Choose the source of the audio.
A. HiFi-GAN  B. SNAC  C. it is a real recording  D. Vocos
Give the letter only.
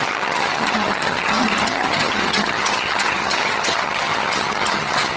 A